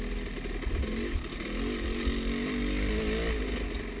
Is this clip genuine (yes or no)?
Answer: yes